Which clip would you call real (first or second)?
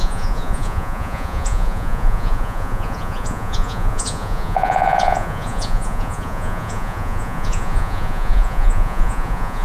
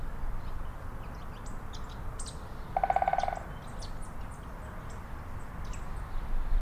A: second